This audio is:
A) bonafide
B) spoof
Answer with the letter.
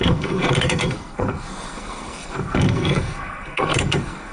B